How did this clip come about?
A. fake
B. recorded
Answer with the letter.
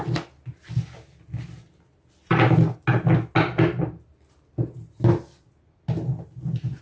B